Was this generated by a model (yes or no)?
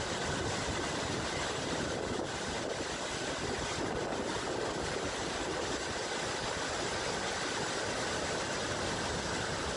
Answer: no